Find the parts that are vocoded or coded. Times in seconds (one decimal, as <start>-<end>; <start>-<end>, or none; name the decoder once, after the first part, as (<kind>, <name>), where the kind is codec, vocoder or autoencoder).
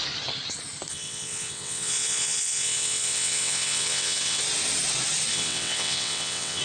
0.9-4.4 (vocoder, WaveNeXt); 5.3-6.6